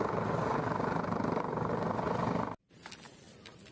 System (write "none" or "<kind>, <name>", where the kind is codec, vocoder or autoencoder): none